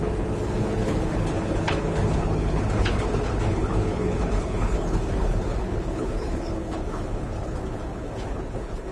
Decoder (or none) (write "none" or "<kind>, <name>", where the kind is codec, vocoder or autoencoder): codec, HILCodec